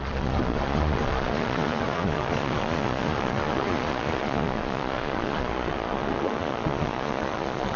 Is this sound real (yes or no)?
no